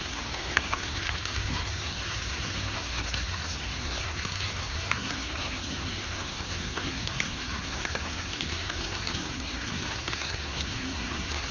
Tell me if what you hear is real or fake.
fake